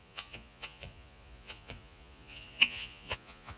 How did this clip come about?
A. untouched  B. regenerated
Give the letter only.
B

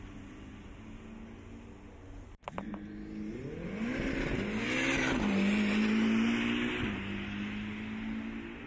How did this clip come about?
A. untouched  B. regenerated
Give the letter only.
A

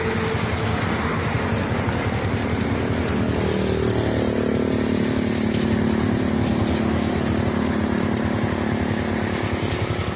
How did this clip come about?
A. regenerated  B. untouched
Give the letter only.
B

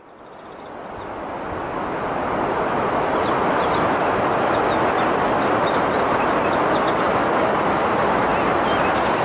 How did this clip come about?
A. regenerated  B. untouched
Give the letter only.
B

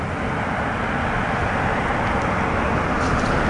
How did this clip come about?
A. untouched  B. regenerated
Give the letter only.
A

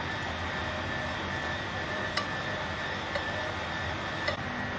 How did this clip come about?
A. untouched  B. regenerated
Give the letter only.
A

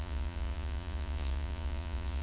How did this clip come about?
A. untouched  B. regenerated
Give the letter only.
B